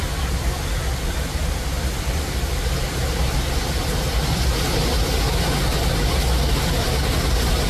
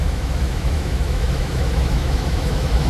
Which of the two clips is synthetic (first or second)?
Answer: second